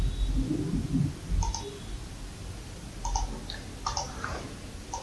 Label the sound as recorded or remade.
recorded